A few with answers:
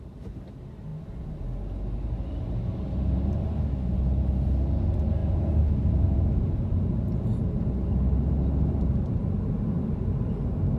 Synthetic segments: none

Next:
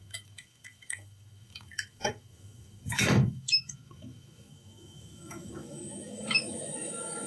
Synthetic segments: 0.0-7.3 (autoencoder, DAC-VAE)

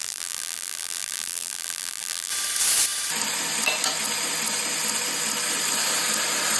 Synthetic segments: 0.0-2.3 (vocoder, BigVGAN v2)

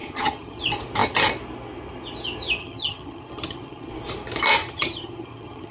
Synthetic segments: 0.0-0.6 (vocoder, HiFi-GAN); 2.6-3.9; 4.6-5.7

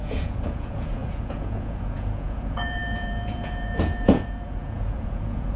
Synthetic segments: 0.0-5.6 (vocoder, Vocos)

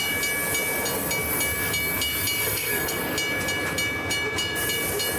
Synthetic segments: 2.4-3.0 (codec, SNAC)